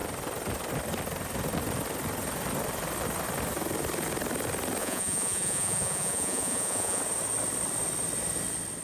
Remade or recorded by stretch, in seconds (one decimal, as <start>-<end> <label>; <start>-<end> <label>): 0.0-4.8 recorded; 4.8-7.0 remade; 7.0-8.8 recorded